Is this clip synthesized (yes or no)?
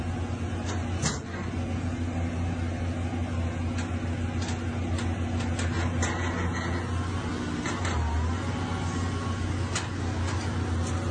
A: no